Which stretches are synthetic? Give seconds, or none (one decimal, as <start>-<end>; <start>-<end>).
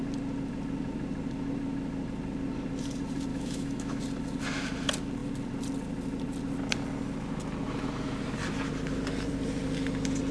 3.3-4.0